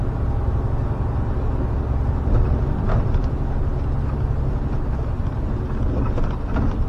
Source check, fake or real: real